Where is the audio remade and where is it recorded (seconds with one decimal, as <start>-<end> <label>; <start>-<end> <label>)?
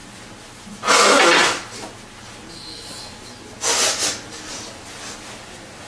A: 0.0-5.9 recorded